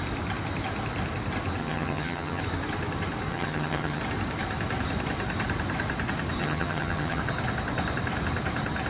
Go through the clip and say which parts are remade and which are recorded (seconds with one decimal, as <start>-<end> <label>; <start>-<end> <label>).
0.0-1.6 recorded; 1.6-2.4 remade; 2.4-3.3 recorded; 3.3-4.0 remade; 4.0-6.4 recorded; 6.4-7.2 remade; 7.2-8.9 recorded